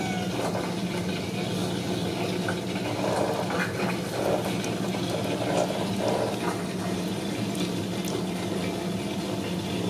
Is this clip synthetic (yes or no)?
no